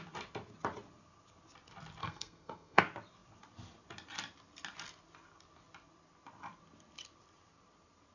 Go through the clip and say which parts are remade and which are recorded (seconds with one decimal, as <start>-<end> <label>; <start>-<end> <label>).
0.0-2.0 recorded; 2.0-2.8 remade; 2.8-8.1 recorded